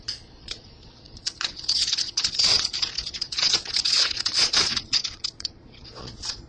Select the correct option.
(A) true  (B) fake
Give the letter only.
B